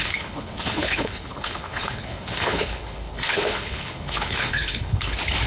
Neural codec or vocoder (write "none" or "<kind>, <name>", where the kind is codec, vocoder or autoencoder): codec, HILCodec